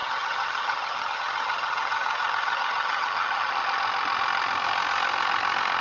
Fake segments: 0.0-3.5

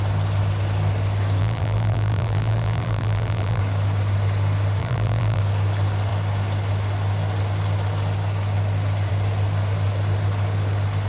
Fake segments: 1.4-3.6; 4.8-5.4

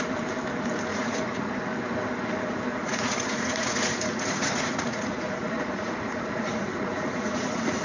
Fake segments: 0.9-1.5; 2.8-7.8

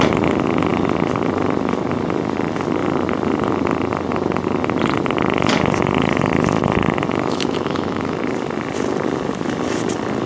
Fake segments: 7.1-8.2

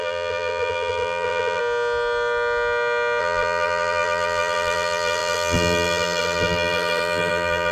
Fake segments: 0.0-1.6; 3.2-7.7

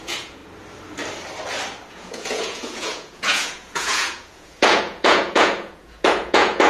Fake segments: 0.0-0.4; 1.9-6.7